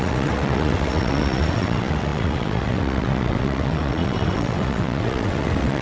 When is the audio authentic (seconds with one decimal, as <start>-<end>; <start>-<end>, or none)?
none